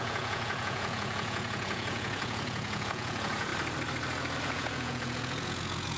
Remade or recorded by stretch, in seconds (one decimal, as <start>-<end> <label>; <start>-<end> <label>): 0.0-3.5 remade; 3.5-4.4 recorded; 4.4-6.0 remade